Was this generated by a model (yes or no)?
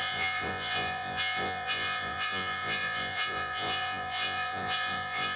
yes